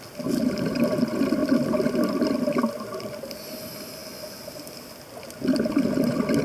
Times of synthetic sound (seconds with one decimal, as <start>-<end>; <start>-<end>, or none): 1.4-3.2; 4.0-5.1